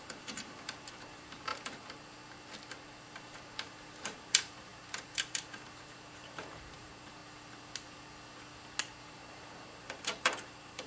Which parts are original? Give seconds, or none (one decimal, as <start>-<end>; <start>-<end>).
1.5-3.2; 7.2-9.1